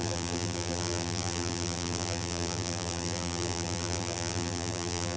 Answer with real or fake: fake